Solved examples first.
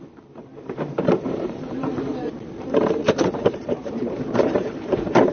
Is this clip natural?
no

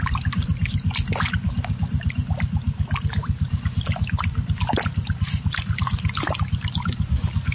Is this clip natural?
yes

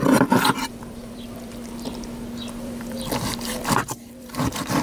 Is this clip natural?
no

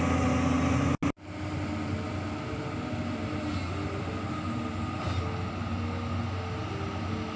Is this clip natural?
yes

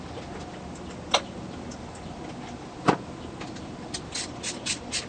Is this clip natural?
yes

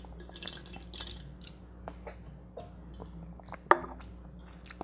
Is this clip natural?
yes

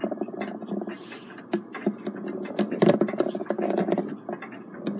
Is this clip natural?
yes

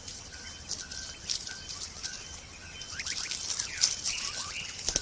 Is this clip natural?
yes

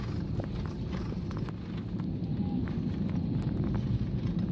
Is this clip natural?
yes